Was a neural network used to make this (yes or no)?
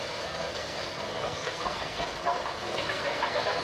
yes